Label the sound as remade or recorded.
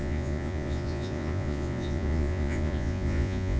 remade